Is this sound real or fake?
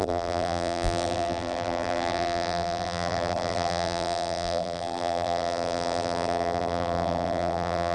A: fake